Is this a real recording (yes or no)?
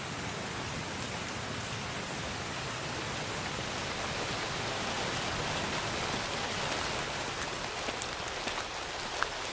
yes